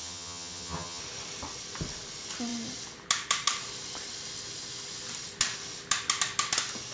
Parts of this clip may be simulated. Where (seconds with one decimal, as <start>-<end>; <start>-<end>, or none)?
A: 0.0-1.0